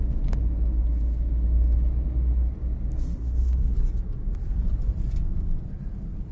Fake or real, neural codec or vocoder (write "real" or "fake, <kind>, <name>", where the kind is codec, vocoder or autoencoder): real